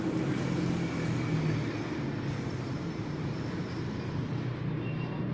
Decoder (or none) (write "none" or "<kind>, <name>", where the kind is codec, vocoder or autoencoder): none